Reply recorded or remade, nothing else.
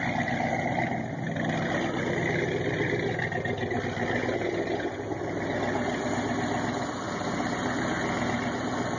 recorded